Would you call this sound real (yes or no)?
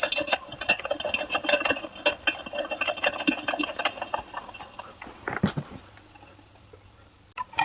yes